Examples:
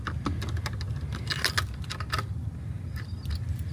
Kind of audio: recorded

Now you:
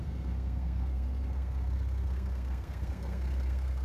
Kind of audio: remade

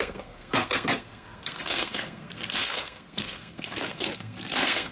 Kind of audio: remade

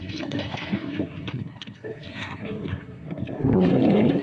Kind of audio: remade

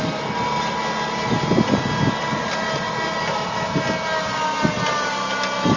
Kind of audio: recorded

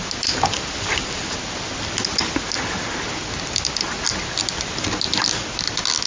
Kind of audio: recorded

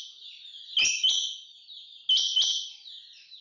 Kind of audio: recorded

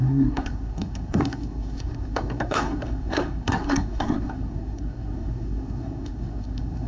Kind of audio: remade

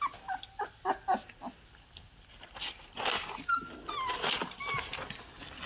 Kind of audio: recorded